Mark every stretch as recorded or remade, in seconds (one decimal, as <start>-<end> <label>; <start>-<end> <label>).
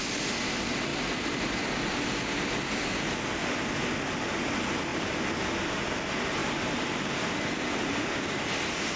0.0-6.4 recorded; 6.4-8.4 remade; 8.4-9.0 recorded